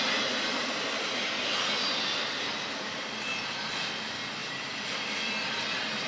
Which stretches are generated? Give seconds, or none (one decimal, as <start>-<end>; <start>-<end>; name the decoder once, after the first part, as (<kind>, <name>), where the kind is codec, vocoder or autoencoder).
0.6-2.3 (vocoder, BigVGAN v2); 4.4-5.3